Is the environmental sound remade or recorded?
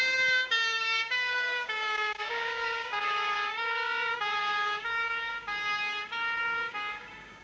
remade